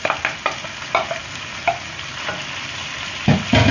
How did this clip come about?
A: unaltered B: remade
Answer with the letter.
A